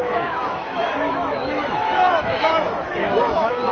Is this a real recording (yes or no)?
no